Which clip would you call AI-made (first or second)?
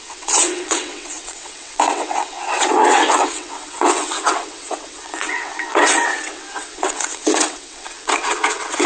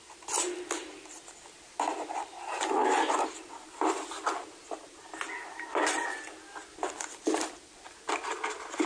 first